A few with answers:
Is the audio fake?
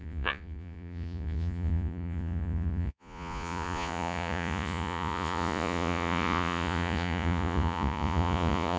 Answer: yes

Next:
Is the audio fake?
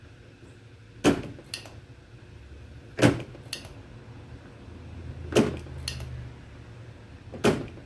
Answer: no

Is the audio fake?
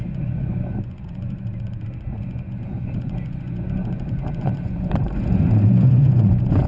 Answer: yes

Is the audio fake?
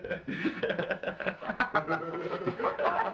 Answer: yes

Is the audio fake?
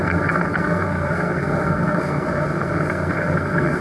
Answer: yes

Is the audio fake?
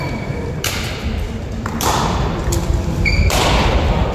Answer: yes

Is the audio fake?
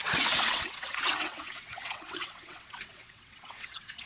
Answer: yes